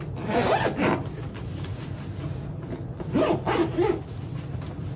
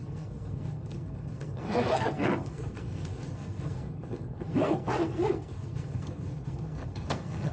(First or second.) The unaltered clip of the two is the first